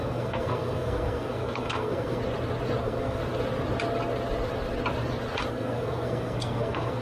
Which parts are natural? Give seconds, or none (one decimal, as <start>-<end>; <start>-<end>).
2.2-2.8; 3.2-5.5